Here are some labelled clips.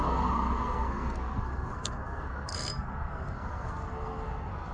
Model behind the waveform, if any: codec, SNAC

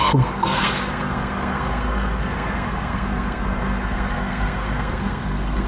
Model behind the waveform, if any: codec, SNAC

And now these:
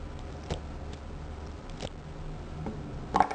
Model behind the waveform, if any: none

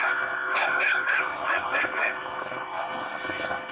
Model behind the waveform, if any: codec, SNAC